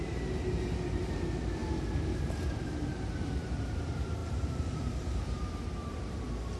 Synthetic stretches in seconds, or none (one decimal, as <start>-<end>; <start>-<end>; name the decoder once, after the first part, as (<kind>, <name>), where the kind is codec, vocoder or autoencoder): 0.0-1.6 (vocoder, BigVGAN v2); 2.2-6.6